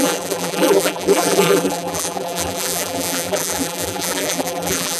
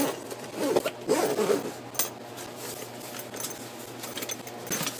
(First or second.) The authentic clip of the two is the second